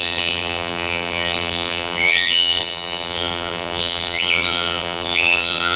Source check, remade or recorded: remade